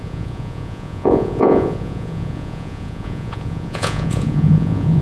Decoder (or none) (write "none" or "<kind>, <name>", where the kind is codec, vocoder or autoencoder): vocoder, Vocos